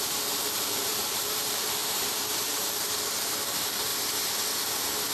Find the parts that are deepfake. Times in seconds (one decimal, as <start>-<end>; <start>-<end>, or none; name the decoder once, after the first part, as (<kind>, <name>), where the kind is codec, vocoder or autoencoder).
0.0-3.9 (vocoder, BigVGAN v2)